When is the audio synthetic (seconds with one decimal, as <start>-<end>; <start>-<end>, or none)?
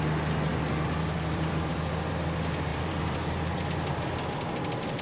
0.5-2.1; 2.7-3.5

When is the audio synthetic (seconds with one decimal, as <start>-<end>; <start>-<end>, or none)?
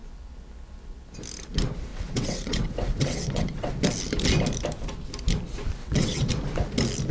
1.9-3.7; 5.8-6.3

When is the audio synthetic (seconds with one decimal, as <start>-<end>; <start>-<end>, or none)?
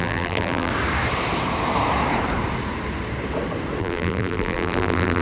0.0-0.7; 3.8-5.2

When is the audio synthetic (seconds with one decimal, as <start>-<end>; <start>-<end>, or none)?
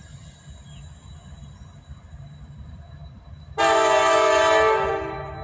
none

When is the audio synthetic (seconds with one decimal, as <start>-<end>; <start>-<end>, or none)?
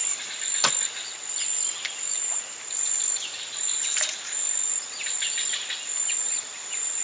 6.0-7.0